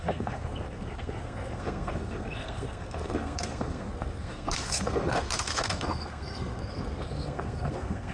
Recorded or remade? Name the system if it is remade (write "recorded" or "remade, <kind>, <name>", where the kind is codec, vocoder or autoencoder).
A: remade, codec, SNAC